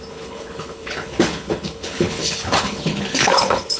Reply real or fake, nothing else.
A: fake